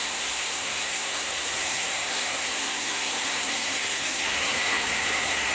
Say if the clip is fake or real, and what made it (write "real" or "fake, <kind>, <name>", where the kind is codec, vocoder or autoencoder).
fake, codec, SNAC